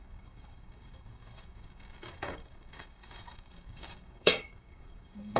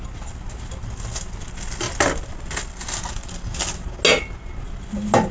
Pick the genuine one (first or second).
second